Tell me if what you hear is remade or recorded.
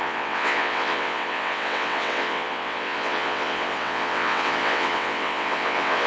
remade